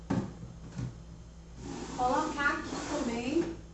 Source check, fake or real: real